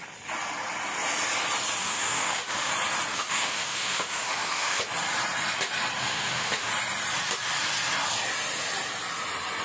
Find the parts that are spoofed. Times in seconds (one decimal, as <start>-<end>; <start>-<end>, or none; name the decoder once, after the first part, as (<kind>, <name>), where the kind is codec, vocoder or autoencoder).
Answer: 1.8-2.7 (autoencoder, DAC-VAE); 3.1-4.8; 6.0-6.7